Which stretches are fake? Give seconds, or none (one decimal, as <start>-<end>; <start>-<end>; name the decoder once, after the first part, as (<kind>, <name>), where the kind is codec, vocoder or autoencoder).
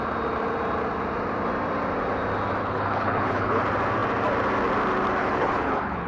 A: 2.6-3.6 (codec, HILCodec); 5.2-6.1